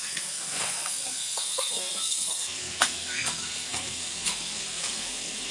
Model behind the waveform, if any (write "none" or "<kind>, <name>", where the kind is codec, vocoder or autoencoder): codec, SNAC